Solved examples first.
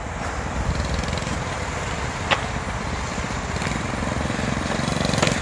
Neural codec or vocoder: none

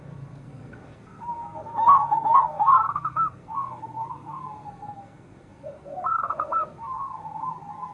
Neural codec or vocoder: codec, SNAC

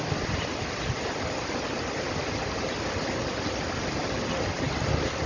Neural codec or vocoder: none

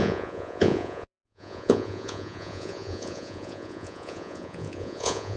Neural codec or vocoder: vocoder, Vocos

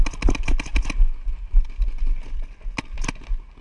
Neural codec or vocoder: none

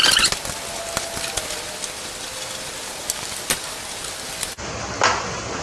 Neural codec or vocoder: none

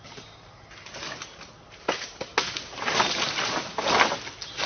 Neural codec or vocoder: none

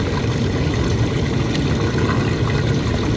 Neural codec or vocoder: none